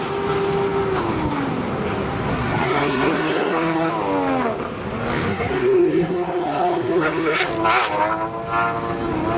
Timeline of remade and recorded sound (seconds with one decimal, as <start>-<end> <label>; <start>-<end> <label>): 0.0-2.3 recorded; 2.3-3.9 remade; 3.9-5.3 recorded; 5.3-7.5 remade; 7.5-9.4 recorded

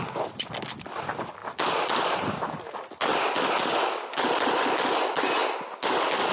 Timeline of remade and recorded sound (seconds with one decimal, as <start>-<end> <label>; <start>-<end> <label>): 0.0-6.3 recorded

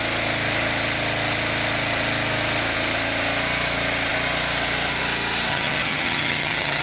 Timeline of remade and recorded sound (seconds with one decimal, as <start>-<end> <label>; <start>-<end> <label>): 0.0-5.5 recorded; 5.5-6.8 remade

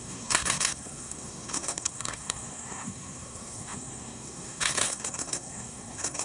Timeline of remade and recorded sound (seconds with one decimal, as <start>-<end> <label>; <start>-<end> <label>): 0.0-6.2 remade

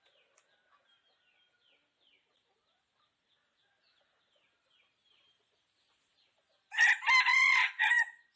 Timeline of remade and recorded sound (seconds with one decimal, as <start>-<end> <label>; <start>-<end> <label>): 0.0-7.3 recorded; 7.3-8.4 remade

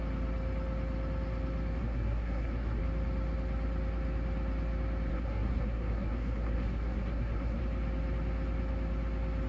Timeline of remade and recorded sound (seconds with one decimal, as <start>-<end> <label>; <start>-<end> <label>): 0.0-1.8 recorded; 1.8-2.8 remade; 2.8-5.1 recorded; 5.1-7.6 remade; 7.6-9.5 recorded

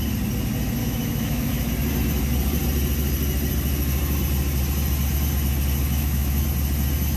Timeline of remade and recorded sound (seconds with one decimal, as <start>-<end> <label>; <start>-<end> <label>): 0.0-0.8 recorded; 0.8-1.7 remade; 1.7-5.8 recorded; 5.8-6.4 remade; 6.4-7.2 recorded